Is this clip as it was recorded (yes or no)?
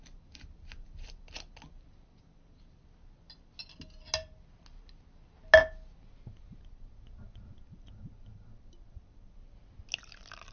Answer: yes